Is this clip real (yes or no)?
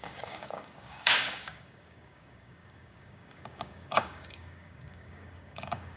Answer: no